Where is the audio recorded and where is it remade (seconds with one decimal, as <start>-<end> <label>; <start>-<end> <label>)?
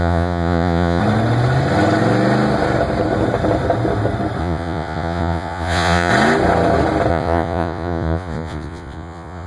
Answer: 0.0-1.0 remade; 1.0-4.4 recorded; 4.4-6.1 remade; 6.1-7.1 recorded; 7.1-9.5 remade